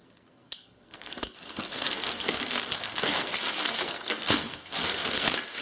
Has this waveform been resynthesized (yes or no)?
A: yes